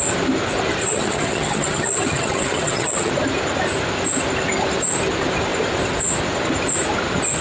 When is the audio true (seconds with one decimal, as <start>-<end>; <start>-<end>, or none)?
0.0-0.8; 3.1-7.4